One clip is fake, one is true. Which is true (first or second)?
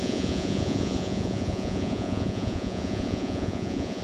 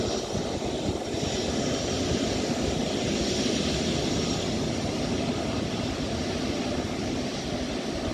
second